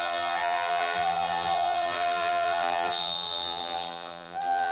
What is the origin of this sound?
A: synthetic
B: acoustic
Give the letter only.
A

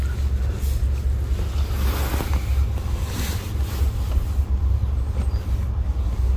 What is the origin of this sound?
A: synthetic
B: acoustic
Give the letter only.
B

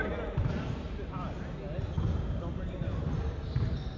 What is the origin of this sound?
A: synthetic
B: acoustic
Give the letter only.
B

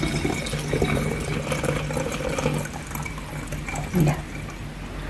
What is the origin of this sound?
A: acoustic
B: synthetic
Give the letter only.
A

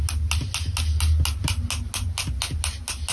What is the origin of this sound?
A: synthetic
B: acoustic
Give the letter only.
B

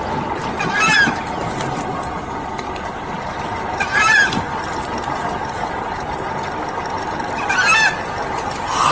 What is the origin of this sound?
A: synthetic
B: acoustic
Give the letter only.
B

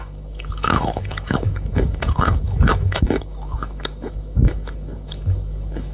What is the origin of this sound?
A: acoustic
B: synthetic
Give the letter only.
B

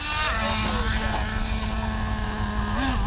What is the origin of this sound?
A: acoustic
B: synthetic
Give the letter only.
A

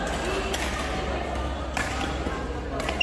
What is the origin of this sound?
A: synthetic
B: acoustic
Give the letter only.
B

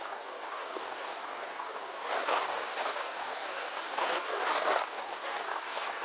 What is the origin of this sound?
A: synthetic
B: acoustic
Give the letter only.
A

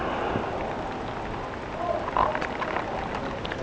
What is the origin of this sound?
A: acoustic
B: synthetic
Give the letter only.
A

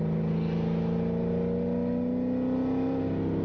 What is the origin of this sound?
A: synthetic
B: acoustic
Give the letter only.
B